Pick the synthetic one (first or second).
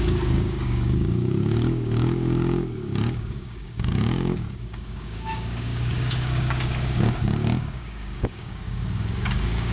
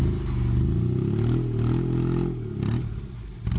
first